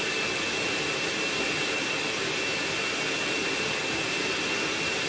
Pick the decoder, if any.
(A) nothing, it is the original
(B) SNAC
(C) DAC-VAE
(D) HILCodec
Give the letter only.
A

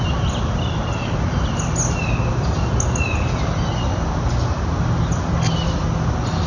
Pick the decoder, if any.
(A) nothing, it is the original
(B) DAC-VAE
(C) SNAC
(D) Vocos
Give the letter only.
A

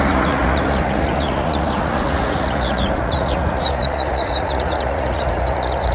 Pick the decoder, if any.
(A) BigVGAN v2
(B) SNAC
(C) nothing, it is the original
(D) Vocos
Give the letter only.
D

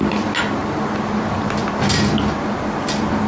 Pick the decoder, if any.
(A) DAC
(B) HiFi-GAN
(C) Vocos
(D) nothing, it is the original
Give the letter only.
D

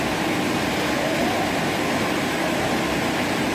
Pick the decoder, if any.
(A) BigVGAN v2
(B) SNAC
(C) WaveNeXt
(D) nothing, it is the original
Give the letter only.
D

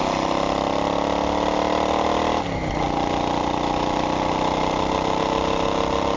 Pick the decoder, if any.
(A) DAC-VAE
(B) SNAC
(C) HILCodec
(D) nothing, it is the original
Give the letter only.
D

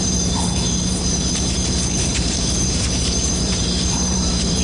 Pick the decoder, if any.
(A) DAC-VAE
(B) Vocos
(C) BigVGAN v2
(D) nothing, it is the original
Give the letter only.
C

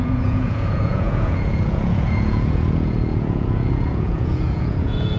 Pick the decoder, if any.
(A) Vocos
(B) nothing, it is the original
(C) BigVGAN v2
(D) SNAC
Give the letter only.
A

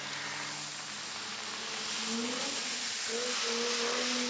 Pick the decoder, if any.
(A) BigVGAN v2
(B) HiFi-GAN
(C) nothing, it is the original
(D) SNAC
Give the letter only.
C